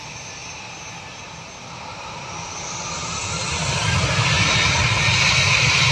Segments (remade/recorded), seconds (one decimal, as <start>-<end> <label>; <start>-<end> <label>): 0.0-5.9 recorded